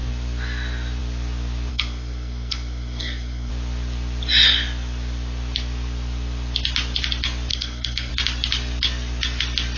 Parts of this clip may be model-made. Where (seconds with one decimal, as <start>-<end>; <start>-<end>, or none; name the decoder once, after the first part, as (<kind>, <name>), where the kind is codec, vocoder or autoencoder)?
1.7-3.5 (codec, SNAC); 7.5-8.1